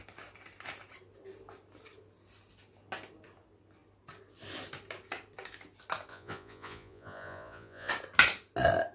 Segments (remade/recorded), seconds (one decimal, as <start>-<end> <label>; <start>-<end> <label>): 0.0-6.1 recorded; 6.1-7.9 remade; 7.9-8.9 recorded